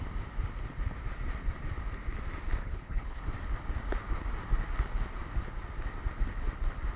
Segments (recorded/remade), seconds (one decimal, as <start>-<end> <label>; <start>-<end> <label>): 0.0-2.6 recorded; 2.6-3.2 remade; 3.2-7.0 recorded

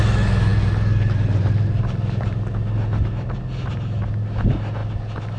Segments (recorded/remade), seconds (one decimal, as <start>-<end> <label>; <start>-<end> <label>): 0.0-5.4 recorded

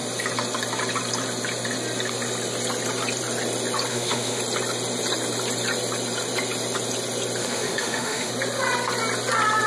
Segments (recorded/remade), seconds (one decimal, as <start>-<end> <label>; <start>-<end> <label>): 0.0-3.9 recorded; 3.9-4.4 remade; 4.4-7.4 recorded; 7.4-8.3 remade; 8.3-9.7 recorded

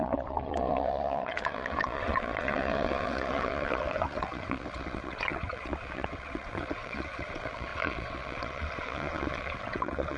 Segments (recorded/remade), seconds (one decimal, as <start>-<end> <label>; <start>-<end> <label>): 0.0-10.2 remade

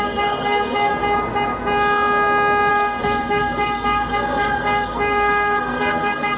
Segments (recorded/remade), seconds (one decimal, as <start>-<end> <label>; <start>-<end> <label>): 0.0-0.9 remade; 0.9-2.7 recorded; 2.7-6.4 remade